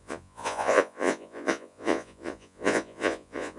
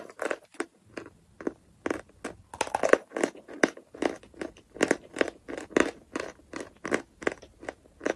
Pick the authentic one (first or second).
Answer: second